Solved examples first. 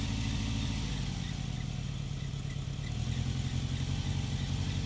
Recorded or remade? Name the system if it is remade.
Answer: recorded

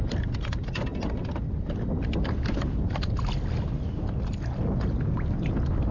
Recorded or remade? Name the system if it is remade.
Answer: recorded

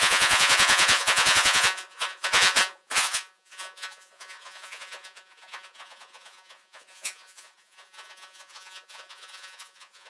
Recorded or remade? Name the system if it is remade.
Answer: remade, vocoder, Vocos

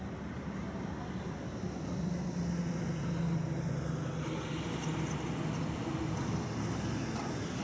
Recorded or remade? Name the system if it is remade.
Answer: recorded